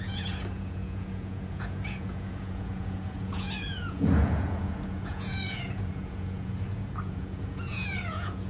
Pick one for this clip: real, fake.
fake